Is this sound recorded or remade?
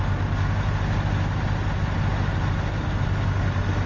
recorded